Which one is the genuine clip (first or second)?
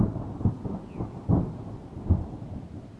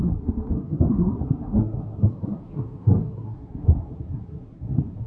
first